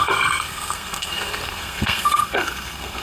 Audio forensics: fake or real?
fake